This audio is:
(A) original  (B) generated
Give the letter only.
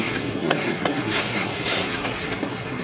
B